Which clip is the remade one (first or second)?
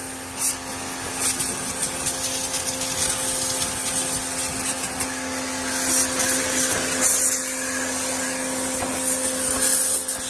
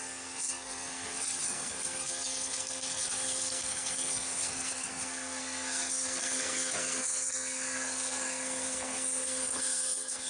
second